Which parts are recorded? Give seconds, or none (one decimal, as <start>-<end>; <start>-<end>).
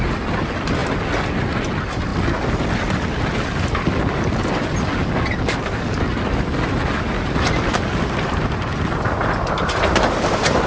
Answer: 0.0-10.7